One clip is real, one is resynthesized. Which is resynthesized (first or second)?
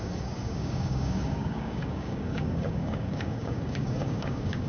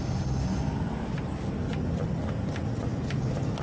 first